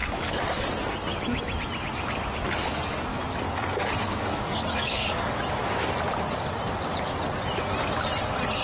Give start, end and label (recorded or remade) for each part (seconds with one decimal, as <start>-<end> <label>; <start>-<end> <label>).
0.0-0.7 remade; 0.7-3.1 recorded; 3.1-5.3 remade; 5.3-8.6 recorded

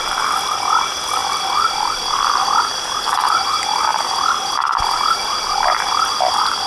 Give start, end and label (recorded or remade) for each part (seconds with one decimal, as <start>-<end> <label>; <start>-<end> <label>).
0.0-1.2 recorded; 1.2-3.0 remade; 3.0-3.9 recorded; 3.9-5.9 remade; 5.9-6.7 recorded

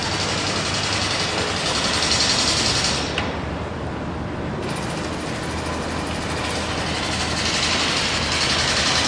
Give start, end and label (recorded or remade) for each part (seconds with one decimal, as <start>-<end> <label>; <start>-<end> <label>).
0.0-9.1 recorded

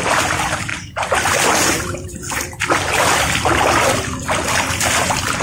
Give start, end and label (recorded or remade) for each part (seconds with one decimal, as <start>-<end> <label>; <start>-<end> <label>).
0.0-5.4 recorded

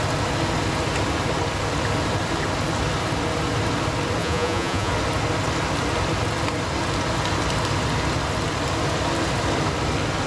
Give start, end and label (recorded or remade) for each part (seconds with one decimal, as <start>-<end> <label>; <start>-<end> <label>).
0.0-4.2 recorded; 4.2-4.9 remade; 4.9-10.3 recorded

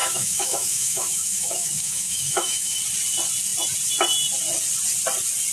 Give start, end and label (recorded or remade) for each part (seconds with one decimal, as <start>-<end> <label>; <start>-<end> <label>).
0.0-2.8 remade; 2.8-5.5 recorded

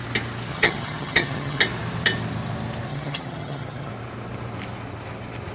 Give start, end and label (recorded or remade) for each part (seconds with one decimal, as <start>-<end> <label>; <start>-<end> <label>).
0.0-0.5 recorded; 0.5-1.6 remade; 1.6-2.9 recorded; 2.9-3.9 remade; 3.9-5.5 recorded

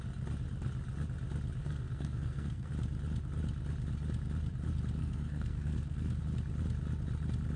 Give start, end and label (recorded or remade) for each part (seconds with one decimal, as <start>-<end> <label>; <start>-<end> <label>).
0.0-1.6 recorded; 1.6-2.7 remade; 2.7-5.0 recorded; 5.0-6.2 remade; 6.2-7.6 recorded